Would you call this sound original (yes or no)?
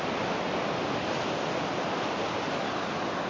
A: yes